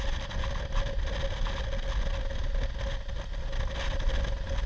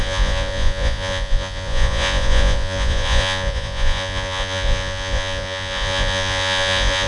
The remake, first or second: second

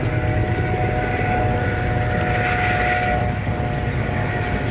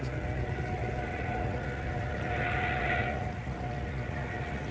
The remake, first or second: second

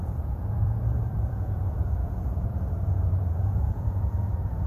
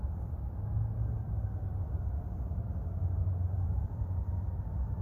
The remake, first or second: first